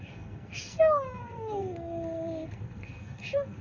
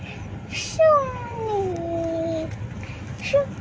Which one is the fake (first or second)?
first